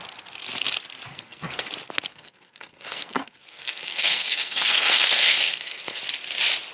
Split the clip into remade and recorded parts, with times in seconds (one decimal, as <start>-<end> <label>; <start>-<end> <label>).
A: 0.0-1.1 recorded; 1.1-1.7 remade; 1.7-2.1 recorded; 2.1-6.0 remade; 6.0-6.7 recorded